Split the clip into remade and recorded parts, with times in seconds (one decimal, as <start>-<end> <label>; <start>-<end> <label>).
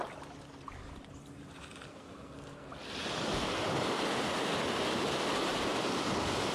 0.0-1.9 recorded; 1.9-2.7 remade; 2.7-6.5 recorded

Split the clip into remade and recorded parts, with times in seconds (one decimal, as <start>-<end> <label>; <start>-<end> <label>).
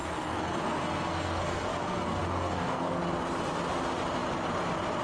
0.0-3.0 remade; 3.0-5.0 recorded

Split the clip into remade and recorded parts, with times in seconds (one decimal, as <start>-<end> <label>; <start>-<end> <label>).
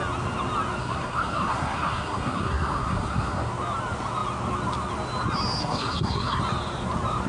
0.0-0.8 recorded; 0.8-3.5 remade; 3.5-5.6 recorded; 5.6-6.4 remade; 6.4-7.3 recorded